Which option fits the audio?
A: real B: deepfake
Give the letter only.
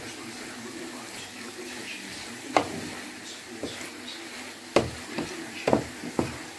A